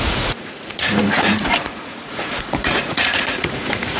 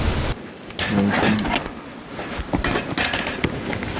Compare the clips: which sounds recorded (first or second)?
second